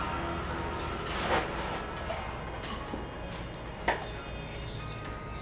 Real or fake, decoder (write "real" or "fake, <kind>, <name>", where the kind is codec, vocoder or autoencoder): real